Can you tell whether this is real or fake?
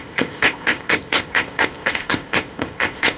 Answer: fake